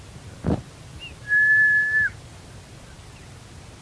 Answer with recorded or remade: recorded